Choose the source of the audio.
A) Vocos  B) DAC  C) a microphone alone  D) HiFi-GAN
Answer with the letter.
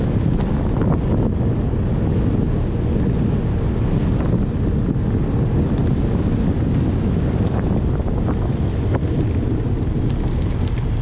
C